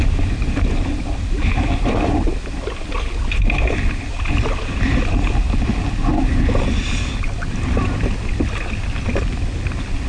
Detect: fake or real real